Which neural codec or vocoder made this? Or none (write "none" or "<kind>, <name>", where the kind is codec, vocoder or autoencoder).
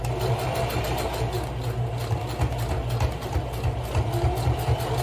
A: none